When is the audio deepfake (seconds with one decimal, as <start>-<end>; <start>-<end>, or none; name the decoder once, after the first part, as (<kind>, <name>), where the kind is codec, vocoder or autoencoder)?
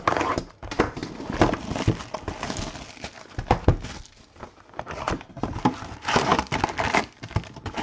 0.0-1.0 (vocoder, BigVGAN v2); 5.4-6.3